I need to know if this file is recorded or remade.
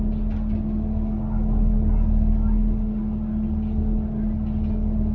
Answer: recorded